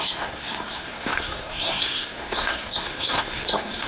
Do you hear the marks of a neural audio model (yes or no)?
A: yes